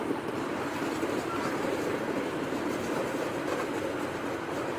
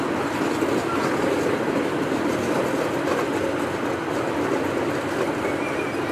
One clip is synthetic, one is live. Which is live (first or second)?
second